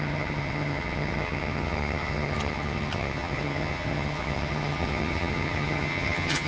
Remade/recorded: remade